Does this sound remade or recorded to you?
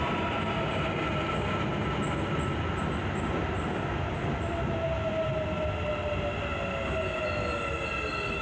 recorded